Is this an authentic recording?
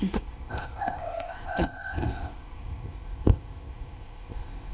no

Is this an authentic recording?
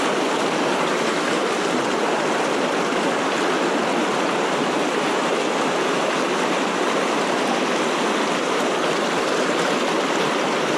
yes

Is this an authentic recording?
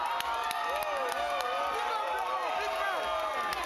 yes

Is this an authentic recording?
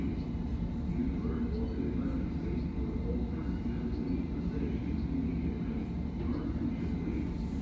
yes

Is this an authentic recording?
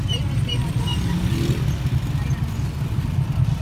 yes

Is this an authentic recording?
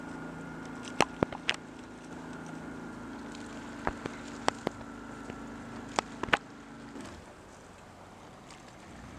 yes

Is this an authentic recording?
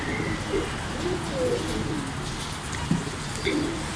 yes